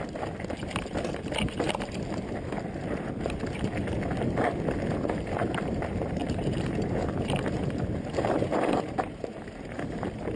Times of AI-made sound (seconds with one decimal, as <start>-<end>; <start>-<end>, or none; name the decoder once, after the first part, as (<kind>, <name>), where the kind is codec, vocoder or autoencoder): 6.2-10.4 (vocoder, BigVGAN v2)